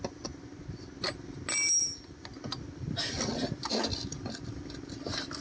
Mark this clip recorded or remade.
recorded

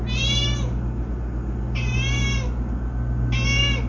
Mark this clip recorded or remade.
recorded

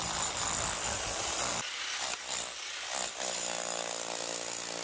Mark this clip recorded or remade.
recorded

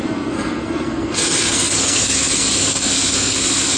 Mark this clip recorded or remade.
remade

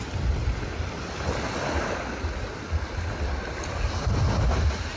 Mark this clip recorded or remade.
recorded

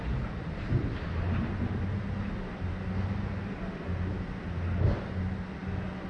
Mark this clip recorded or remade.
recorded